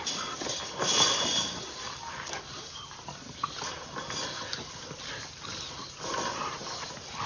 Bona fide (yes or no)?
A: yes